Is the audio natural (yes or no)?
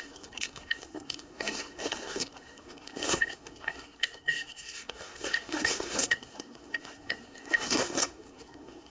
no